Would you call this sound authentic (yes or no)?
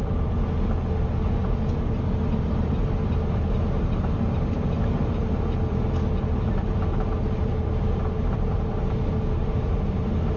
yes